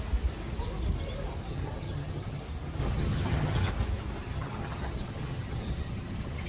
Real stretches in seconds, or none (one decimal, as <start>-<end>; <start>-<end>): 0.0-1.5; 2.4-2.8; 3.7-4.2

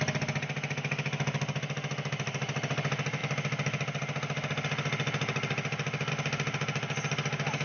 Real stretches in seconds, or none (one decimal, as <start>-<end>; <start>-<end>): 0.0-7.6

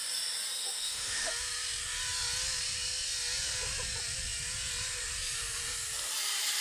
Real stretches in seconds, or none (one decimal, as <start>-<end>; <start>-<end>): 0.0-0.6; 1.3-6.6

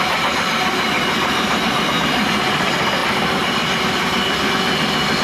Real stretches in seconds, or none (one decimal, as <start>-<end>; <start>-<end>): 0.0-5.2

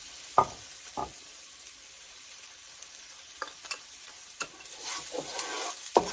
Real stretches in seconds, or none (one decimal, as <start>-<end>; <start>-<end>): 0.0-6.1

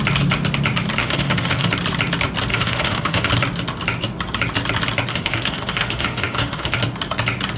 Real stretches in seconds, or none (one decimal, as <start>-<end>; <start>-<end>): 0.0-1.0; 1.7-2.5; 3.3-5.1; 6.8-7.6